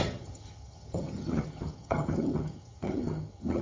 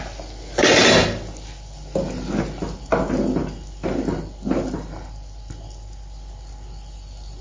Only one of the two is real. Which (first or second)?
second